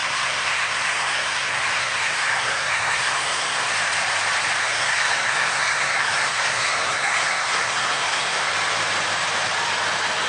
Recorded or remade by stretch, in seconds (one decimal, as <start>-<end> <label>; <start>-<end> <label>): 0.0-3.7 remade; 3.7-4.6 recorded; 4.6-8.5 remade; 8.5-10.3 recorded